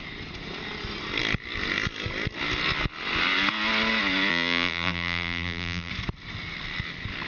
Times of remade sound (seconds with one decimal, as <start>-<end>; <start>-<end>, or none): 4.3-5.9